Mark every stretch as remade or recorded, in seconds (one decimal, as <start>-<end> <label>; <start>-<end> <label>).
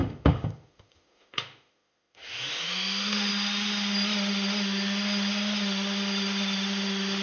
0.0-3.3 remade; 3.3-7.2 recorded